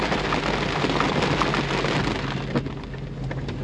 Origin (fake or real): real